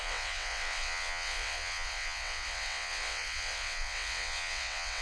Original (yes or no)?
no